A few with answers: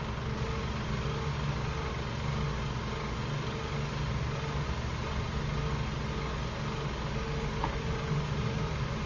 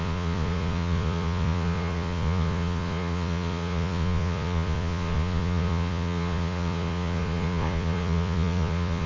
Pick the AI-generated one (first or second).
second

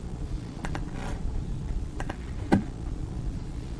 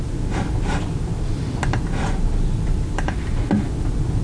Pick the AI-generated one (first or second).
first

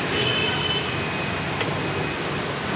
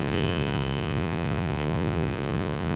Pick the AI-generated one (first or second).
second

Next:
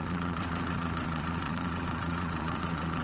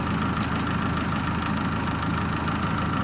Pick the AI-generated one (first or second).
first